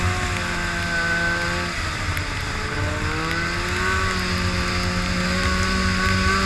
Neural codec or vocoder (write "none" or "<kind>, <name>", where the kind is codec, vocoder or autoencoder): none